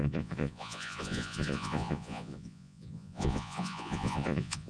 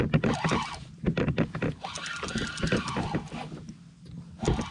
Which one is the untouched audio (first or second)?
second